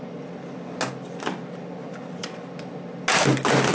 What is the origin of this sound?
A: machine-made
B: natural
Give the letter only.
B